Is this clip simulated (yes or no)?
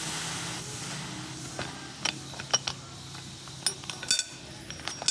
no